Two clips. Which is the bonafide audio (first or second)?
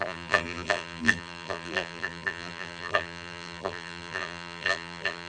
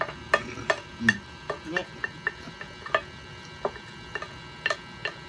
second